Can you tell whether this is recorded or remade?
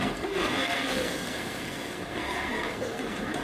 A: remade